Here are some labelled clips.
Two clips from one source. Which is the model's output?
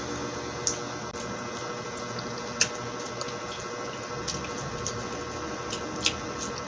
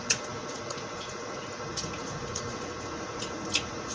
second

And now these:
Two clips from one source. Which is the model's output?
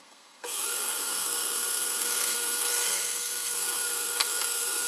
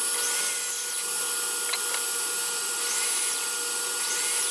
first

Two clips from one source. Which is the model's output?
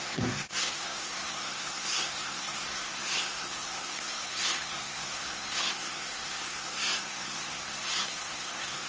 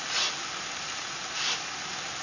first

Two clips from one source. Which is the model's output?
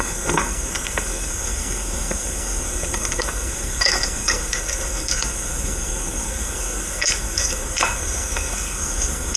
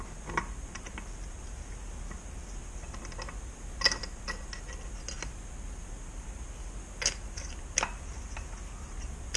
first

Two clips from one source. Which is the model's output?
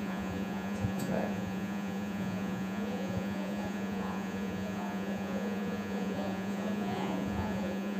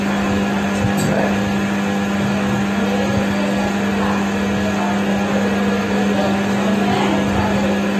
first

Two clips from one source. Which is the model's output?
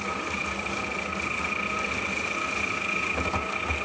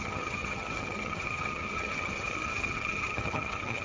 second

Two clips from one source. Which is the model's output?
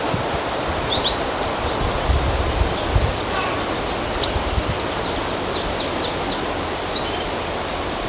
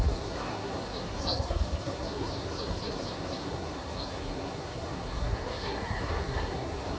second